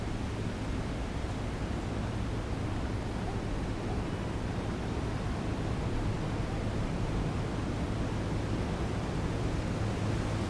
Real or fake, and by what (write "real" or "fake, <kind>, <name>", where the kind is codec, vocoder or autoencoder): real